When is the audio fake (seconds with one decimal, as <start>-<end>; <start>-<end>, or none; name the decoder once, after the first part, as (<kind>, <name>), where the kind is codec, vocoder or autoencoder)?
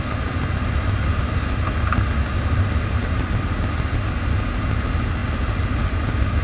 none